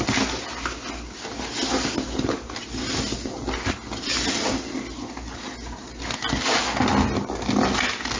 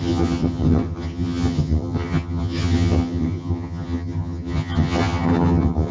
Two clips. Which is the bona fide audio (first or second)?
first